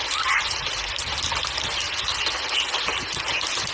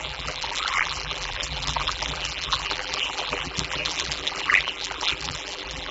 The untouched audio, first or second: first